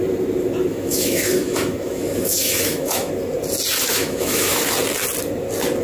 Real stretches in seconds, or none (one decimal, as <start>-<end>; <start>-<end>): 0.0-0.7; 3.1-3.9; 4.6-5.8